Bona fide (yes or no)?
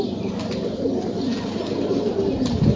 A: yes